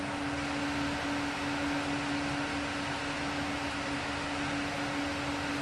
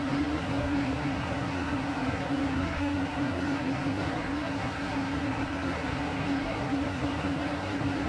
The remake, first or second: second